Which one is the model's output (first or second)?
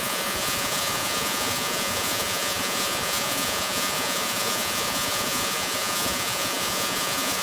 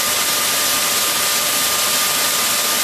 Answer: first